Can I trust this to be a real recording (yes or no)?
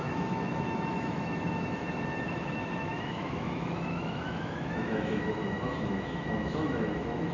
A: no